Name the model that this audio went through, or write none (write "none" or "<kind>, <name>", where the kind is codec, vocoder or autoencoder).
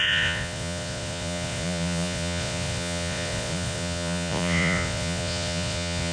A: vocoder, Vocos